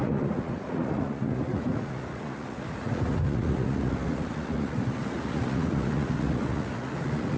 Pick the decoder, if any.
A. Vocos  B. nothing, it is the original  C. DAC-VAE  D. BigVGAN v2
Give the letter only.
A